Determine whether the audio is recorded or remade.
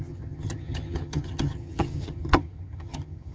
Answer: remade